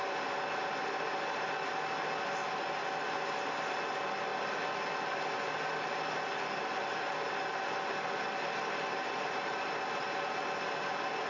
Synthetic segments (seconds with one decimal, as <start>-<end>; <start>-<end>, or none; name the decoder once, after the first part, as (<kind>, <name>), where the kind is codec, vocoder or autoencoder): none